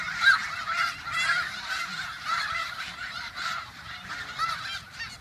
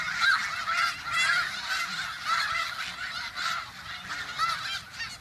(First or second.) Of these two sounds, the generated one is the first